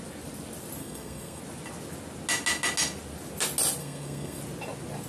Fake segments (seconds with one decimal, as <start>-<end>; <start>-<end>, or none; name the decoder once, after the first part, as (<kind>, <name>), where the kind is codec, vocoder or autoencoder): 0.8-1.4 (codec, SNAC); 3.8-4.4